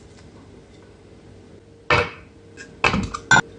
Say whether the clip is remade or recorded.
recorded